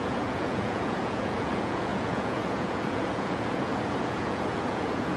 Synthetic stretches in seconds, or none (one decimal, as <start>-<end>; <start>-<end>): 0.0-5.2